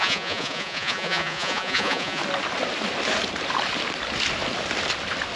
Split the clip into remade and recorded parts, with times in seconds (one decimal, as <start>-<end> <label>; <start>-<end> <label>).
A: 0.0-2.2 remade; 2.2-5.4 recorded